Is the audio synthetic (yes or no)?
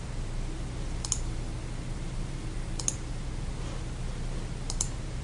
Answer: no